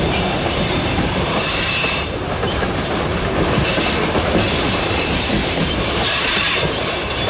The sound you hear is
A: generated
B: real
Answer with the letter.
A